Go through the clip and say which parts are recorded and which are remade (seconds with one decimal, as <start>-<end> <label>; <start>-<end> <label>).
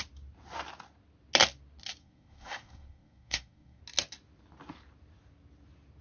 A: 0.0-2.0 recorded; 2.0-3.8 remade; 3.8-6.0 recorded